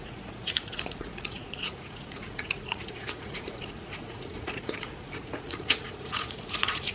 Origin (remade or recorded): remade